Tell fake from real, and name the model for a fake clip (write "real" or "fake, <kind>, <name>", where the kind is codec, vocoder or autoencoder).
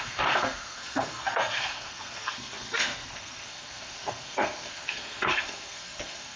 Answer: fake, codec, SNAC